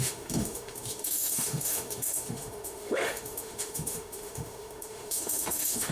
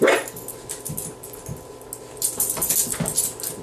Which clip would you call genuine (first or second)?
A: second